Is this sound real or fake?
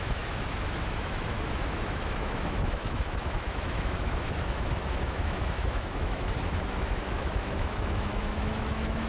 fake